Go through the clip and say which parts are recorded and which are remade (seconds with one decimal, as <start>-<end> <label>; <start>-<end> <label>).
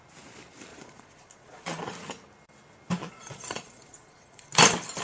0.0-0.7 recorded; 0.7-1.9 remade; 1.9-3.0 recorded; 3.0-4.5 remade; 4.5-5.0 recorded